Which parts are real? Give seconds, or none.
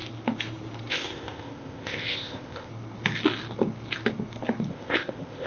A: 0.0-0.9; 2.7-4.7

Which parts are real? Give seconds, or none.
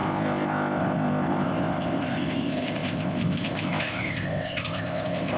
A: none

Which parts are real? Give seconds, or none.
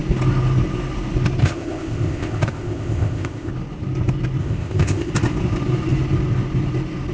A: 0.0-1.4; 3.5-4.4; 5.1-7.1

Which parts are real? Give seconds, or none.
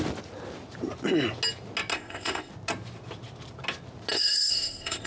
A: 0.0-1.9; 2.5-4.1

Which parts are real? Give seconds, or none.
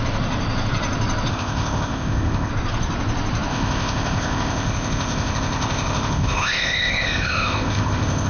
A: 0.0-1.3; 2.5-3.5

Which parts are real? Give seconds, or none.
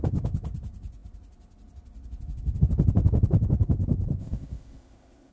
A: 0.0-4.2